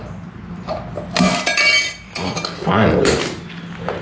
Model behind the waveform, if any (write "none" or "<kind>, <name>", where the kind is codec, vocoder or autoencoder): none